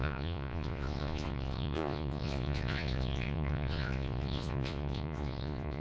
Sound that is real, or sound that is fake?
fake